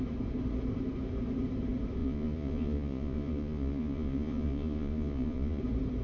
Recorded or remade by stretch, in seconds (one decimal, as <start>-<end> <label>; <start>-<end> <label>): 0.0-2.0 recorded; 2.0-5.6 remade; 5.6-6.0 recorded